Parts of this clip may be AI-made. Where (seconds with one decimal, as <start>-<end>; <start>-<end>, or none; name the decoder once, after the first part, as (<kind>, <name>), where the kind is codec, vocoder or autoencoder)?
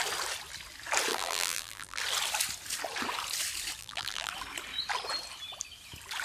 1.1-2.0 (vocoder, BigVGAN v2); 3.8-4.3